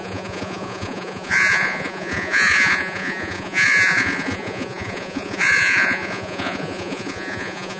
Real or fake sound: fake